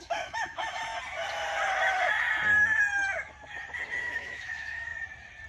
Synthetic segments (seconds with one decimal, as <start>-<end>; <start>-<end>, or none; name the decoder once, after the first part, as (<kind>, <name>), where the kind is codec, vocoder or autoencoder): 0.0-0.9 (autoencoder, DAC-VAE); 4.0-4.9